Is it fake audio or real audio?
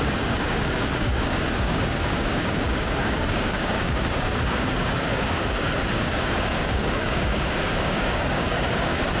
fake